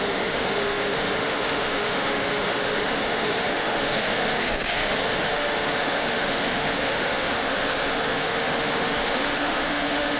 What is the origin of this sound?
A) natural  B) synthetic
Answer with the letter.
B